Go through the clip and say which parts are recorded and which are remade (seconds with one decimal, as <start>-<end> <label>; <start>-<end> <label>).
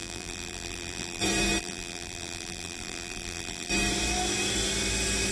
0.0-1.2 remade; 1.2-1.6 recorded; 1.6-3.7 remade; 3.7-5.3 recorded